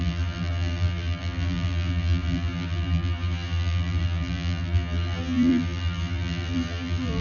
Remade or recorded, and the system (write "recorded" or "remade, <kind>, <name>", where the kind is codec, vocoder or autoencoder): remade, vocoder, BigVGAN v2